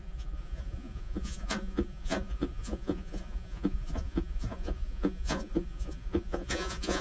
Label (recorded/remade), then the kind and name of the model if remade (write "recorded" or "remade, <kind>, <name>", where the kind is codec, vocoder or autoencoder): remade, vocoder, Vocos